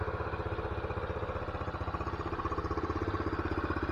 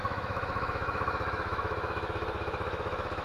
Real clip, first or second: first